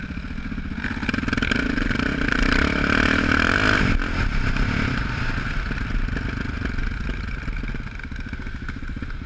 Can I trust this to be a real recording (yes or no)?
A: yes